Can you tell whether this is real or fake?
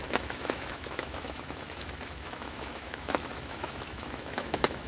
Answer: fake